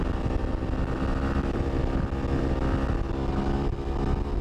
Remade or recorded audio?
recorded